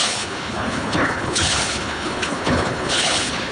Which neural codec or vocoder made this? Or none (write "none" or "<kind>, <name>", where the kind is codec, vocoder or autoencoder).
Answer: codec, HILCodec